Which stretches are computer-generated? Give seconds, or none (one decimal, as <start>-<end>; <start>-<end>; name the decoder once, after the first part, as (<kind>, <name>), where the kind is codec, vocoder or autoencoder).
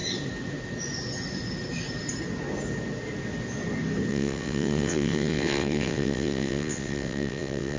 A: 4.1-7.8 (vocoder, WaveNeXt)